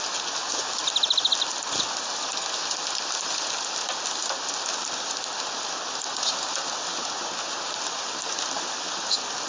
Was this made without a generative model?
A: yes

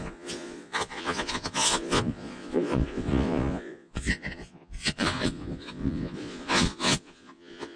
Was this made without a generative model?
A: no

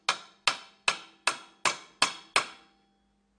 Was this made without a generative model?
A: yes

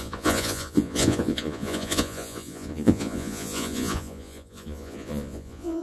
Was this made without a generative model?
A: no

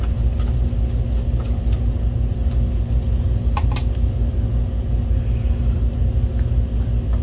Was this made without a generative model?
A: yes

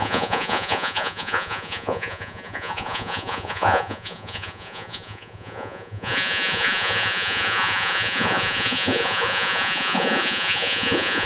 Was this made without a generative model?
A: no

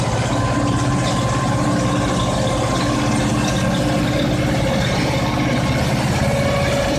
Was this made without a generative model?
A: yes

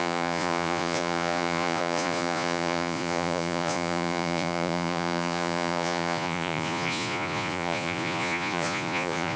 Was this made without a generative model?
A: no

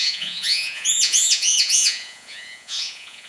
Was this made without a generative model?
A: no